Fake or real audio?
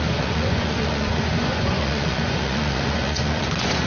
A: fake